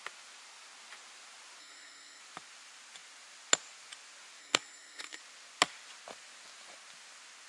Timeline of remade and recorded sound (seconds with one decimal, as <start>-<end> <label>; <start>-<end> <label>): 0.0-1.6 recorded; 1.6-2.2 remade; 2.2-4.4 recorded; 4.4-5.2 remade; 5.2-7.5 recorded